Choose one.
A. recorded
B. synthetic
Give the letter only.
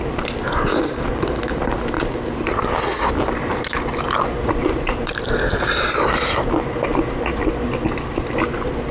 A